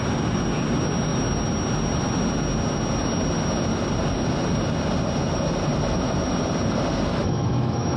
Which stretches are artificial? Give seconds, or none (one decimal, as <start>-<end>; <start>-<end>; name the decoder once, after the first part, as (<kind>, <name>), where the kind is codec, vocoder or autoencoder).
7.1-8.0 (autoencoder, DAC-VAE)